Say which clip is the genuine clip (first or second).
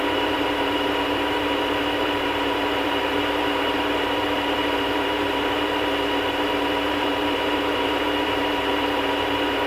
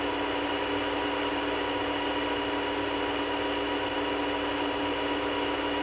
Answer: second